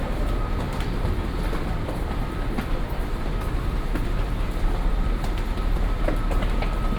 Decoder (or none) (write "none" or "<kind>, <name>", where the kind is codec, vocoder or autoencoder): vocoder, BigVGAN v2